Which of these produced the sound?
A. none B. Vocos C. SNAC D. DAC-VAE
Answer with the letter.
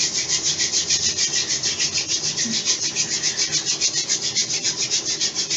A